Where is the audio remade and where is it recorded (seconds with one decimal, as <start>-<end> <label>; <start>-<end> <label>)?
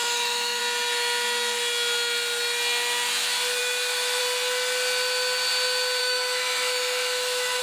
0.0-0.6 remade; 0.6-3.6 recorded; 3.6-4.2 remade; 4.2-6.0 recorded; 6.0-7.6 remade